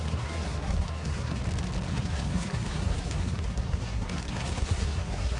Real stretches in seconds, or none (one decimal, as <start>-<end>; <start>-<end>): 1.4-1.9